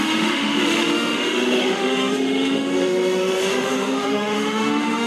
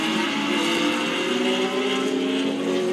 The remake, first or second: first